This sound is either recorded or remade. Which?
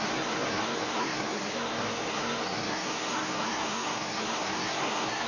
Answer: remade